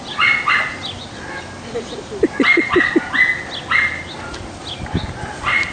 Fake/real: real